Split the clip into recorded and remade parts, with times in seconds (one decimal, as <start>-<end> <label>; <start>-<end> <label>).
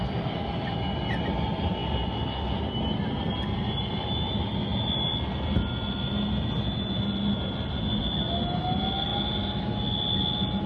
0.0-10.7 recorded